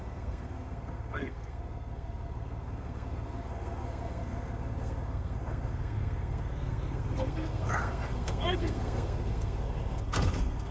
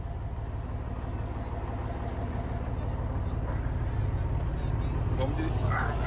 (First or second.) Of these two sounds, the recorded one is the second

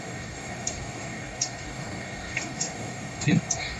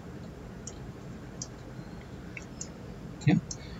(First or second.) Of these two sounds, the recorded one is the second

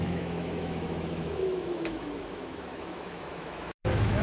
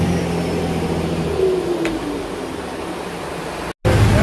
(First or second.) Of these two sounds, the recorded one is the second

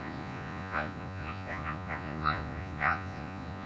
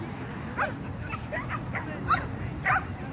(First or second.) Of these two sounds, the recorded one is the second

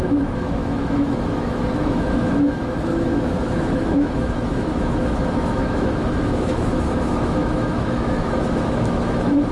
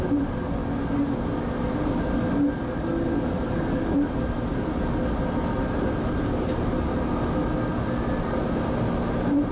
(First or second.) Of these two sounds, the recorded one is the second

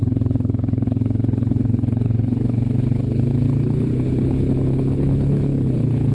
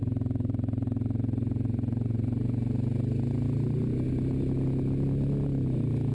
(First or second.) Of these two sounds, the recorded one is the second